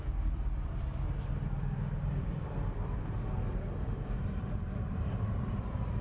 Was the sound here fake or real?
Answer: fake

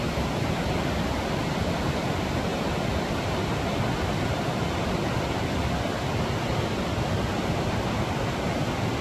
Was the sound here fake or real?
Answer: real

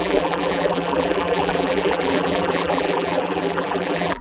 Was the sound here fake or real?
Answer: fake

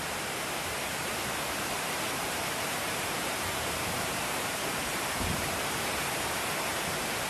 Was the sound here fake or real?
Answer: fake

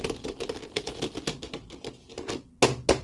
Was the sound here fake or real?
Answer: real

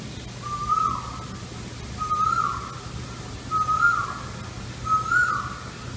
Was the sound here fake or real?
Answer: real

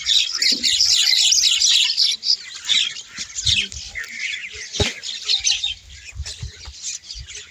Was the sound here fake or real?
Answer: real